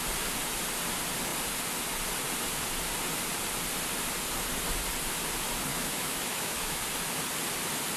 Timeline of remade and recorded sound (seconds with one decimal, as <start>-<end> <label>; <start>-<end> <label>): 0.0-5.7 recorded; 5.7-6.8 remade; 6.8-8.0 recorded